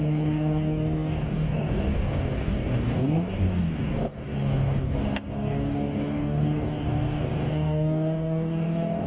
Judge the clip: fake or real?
fake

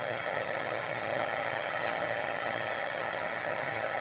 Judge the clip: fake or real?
fake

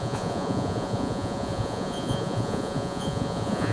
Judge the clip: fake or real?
fake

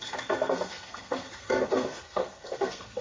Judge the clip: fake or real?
fake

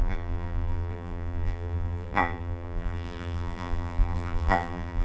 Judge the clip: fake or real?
fake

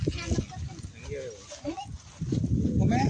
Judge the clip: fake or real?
real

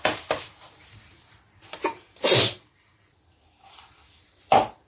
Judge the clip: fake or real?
fake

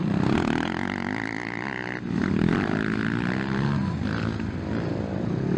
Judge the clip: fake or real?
real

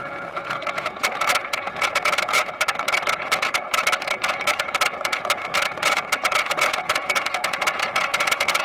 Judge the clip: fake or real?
fake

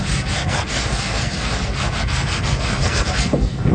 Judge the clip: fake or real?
fake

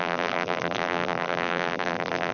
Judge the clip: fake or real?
fake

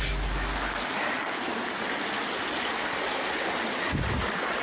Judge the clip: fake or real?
real